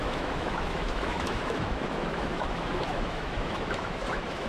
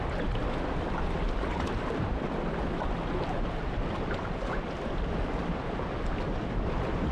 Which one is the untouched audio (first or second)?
second